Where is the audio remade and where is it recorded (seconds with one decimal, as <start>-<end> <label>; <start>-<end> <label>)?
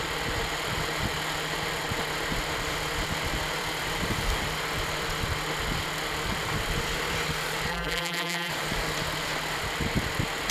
0.0-7.7 recorded; 7.7-8.5 remade; 8.5-10.5 recorded